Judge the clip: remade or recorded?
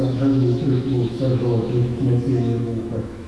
remade